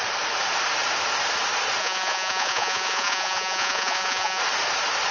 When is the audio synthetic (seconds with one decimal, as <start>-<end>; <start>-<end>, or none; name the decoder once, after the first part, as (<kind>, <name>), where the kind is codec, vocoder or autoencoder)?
1.8-4.4 (vocoder, Vocos)